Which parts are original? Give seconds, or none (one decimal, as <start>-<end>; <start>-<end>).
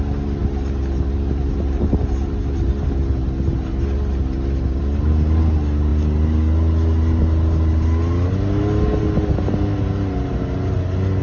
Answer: 0.0-11.2